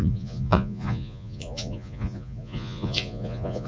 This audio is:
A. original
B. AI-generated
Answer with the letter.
B